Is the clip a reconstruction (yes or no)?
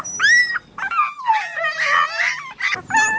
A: no